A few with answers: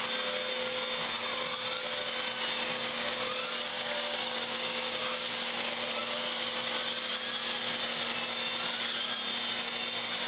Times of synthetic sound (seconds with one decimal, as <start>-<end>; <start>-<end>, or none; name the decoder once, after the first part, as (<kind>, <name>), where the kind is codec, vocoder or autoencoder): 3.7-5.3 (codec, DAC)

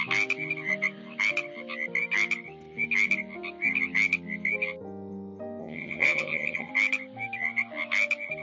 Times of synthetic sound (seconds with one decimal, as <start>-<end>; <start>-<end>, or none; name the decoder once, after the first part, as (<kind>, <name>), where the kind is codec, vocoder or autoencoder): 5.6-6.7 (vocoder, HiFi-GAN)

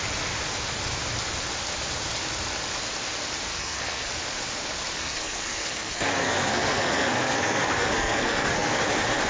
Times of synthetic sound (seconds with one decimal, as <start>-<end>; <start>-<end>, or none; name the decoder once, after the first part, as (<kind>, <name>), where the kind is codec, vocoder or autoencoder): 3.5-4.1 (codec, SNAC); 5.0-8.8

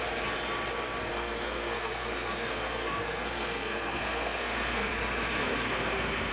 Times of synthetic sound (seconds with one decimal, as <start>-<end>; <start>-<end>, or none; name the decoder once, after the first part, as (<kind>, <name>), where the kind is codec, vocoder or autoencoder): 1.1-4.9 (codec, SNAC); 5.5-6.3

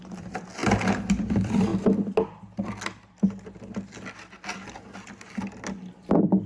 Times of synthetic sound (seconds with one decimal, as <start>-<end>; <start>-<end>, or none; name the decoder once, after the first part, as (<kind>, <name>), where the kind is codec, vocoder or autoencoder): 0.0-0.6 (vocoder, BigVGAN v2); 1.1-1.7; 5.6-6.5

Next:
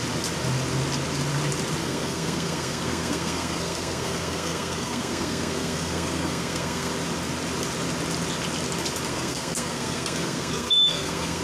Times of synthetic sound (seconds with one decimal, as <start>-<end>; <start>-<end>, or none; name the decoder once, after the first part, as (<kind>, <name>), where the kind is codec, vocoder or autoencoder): 1.8-6.9 (codec, SNAC); 9.1-11.4

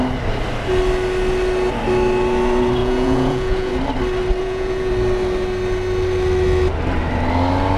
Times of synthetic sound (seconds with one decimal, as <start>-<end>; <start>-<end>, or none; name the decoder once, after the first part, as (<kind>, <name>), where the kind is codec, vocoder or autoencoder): 2.8-3.7 (vocoder, Vocos); 4.4-4.9

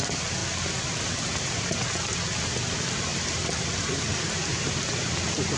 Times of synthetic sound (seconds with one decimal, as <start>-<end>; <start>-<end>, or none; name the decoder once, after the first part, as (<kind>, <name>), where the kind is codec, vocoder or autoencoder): 0.0-0.4 (vocoder, BigVGAN v2); 1.0-5.6